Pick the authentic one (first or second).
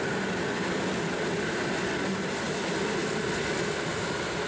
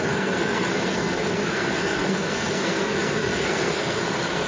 first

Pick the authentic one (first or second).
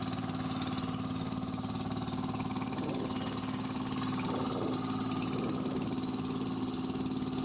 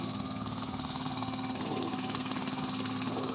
first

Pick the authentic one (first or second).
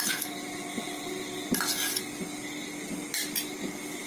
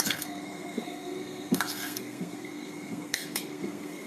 first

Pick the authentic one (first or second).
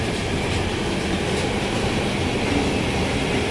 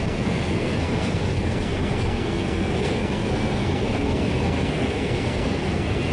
first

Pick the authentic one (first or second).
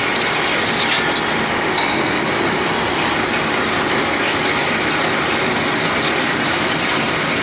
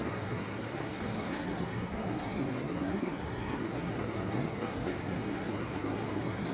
first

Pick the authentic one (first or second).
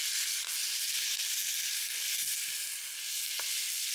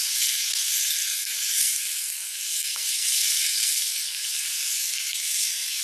first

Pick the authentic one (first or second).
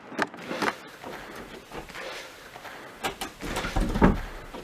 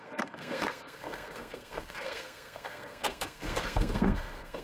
first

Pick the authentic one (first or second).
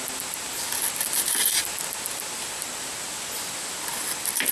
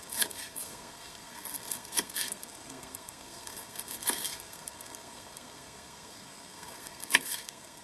first